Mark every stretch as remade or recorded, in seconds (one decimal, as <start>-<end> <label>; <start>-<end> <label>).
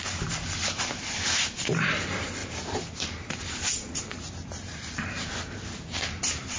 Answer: 0.0-0.6 remade; 0.6-1.4 recorded; 1.4-6.6 remade